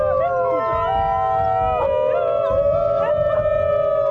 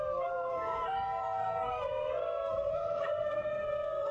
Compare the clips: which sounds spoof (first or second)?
second